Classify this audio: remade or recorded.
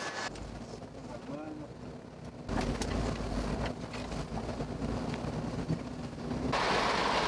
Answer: recorded